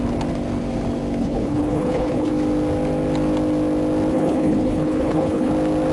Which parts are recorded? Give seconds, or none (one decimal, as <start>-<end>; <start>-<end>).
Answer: 0.0-1.2; 2.3-4.1; 5.5-5.9